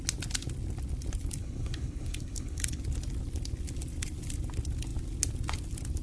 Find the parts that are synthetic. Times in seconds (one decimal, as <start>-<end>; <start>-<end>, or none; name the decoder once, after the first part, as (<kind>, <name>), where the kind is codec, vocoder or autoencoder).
1.4-2.8 (codec, HILCodec)